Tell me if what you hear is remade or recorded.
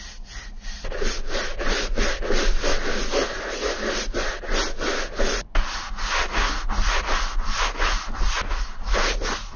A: recorded